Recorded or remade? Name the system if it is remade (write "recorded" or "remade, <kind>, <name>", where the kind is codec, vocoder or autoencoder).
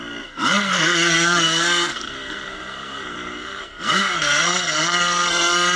remade, codec, SNAC